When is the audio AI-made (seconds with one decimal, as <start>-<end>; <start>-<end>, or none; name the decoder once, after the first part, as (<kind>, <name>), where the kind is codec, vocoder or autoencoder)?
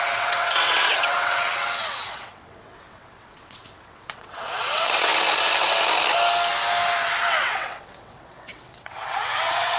0.0-5.1 (vocoder, WaveNeXt); 7.4-9.8